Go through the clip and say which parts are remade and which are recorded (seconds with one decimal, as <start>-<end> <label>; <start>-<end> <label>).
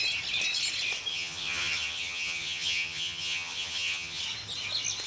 0.0-1.1 recorded; 1.1-4.2 remade; 4.2-5.1 recorded